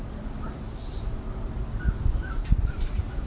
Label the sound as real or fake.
real